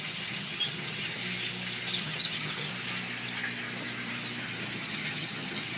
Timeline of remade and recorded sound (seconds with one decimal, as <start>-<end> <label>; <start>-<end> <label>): 0.0-1.2 remade; 1.2-2.0 recorded; 2.0-2.7 remade; 2.7-4.4 recorded; 4.4-5.8 remade